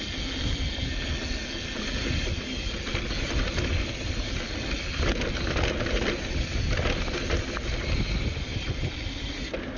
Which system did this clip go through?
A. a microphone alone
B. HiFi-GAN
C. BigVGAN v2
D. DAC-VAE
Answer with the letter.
A